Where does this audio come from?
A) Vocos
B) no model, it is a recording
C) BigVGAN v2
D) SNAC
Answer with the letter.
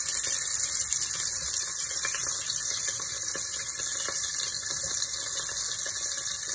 B